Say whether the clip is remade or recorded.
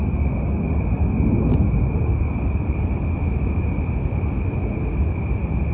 recorded